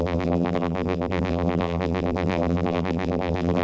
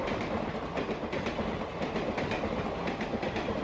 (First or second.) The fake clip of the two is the first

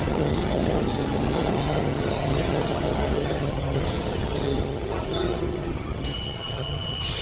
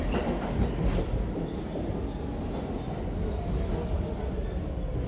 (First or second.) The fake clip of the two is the first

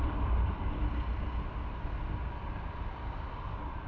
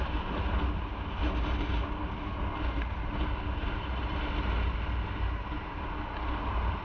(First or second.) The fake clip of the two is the first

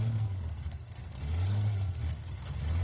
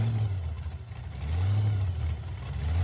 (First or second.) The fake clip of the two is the first